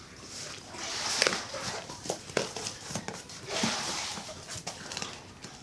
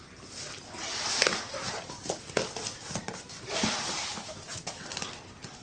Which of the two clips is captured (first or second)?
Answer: second